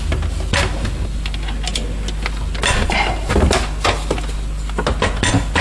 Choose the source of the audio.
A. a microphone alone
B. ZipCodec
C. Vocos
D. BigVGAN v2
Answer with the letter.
A